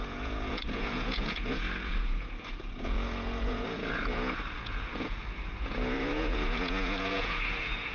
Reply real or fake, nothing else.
fake